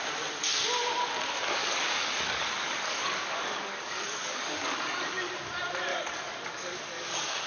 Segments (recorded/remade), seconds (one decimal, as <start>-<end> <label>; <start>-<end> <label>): 0.0-1.6 recorded; 1.6-5.3 remade; 5.3-5.9 recorded; 5.9-7.5 remade